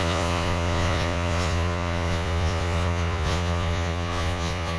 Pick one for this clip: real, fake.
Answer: fake